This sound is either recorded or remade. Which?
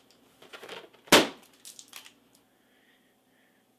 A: recorded